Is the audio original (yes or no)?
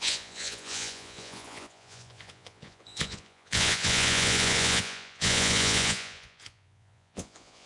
no